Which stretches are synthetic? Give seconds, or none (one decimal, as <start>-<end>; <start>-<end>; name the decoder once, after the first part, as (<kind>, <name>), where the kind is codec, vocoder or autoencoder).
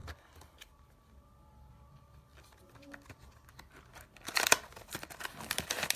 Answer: none